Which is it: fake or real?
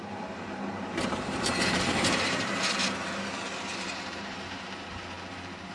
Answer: fake